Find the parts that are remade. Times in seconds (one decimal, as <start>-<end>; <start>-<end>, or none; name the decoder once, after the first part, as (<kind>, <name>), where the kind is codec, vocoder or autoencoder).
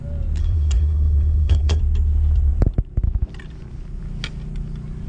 0.4-1.8 (codec, SNAC)